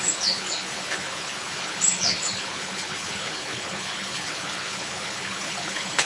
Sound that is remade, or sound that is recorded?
remade